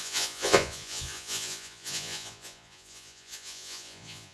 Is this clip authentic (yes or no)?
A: no